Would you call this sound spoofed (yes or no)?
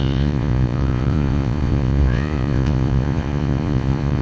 yes